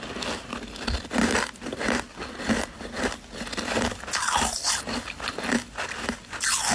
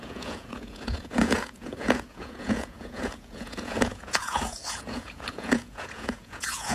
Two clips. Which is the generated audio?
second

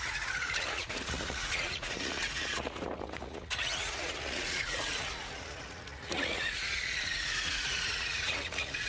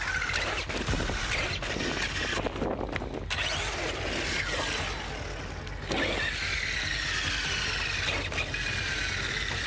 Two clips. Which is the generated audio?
first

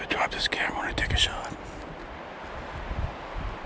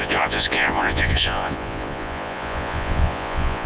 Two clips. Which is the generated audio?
second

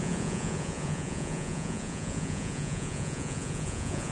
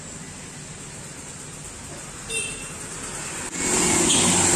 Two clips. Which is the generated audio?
first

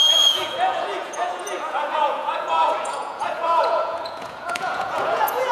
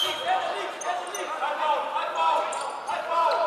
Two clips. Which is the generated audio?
first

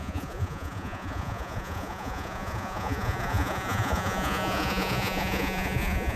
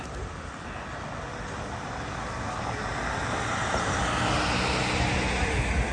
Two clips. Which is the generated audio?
first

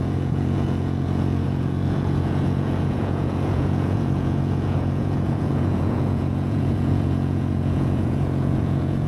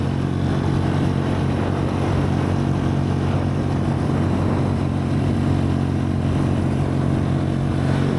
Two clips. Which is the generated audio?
first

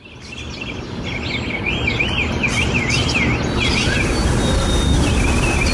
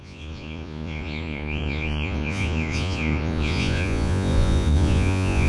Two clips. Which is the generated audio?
second